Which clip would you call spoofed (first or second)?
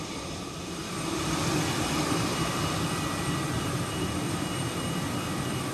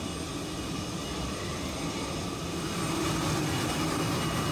first